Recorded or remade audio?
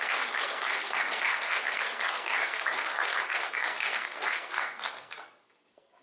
remade